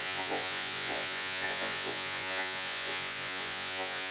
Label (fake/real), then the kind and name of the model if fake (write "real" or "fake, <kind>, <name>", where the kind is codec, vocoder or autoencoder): fake, vocoder, Vocos